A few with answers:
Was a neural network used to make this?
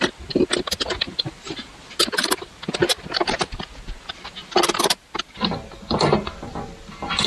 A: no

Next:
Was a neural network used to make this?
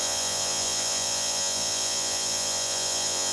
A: yes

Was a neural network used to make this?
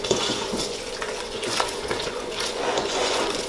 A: yes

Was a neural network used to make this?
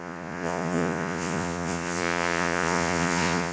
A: yes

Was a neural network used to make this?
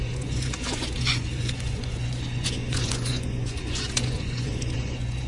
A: yes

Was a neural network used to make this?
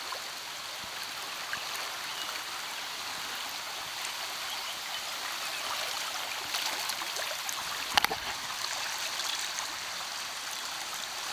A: no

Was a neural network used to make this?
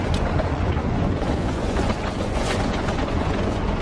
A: yes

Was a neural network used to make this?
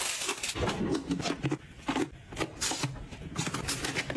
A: no